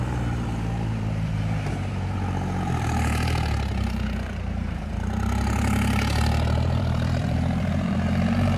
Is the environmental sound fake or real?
fake